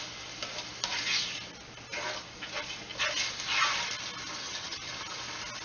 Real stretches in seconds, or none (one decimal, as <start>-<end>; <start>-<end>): 0.0-4.4; 4.9-5.6